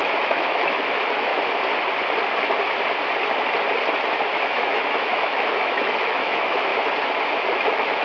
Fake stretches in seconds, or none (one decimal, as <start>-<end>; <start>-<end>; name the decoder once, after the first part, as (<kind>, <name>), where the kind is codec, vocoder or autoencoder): 0.0-1.3 (autoencoder, DAC-VAE); 4.4-6.7; 7.5-8.0